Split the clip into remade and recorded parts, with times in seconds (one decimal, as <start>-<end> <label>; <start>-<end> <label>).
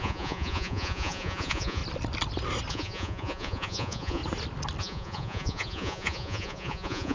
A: 0.0-1.8 remade; 1.8-2.7 recorded; 2.7-4.2 remade; 4.2-4.8 recorded; 4.8-7.1 remade